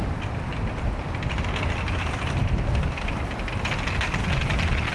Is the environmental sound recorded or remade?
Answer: recorded